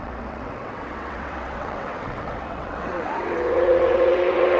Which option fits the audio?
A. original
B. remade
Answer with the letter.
B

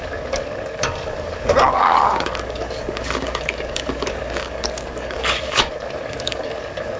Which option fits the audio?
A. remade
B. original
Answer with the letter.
A